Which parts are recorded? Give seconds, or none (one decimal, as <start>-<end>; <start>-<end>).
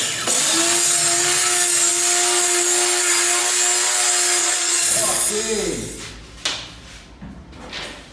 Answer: 0.0-4.4; 5.3-8.1